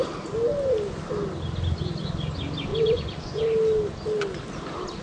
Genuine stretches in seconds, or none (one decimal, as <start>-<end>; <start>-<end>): 0.0-2.7; 3.4-5.0